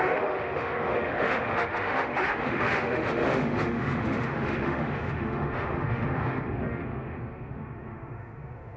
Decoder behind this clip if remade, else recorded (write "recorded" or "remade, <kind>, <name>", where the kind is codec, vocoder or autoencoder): remade, autoencoder, DAC-VAE